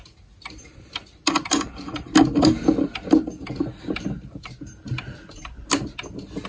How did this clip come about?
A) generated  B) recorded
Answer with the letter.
B